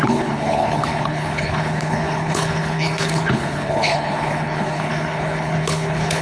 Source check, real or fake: fake